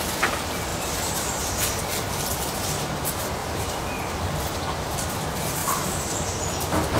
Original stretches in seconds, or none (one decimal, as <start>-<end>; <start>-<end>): 0.0-0.7; 1.8-3.4; 4.0-5.6; 6.2-7.0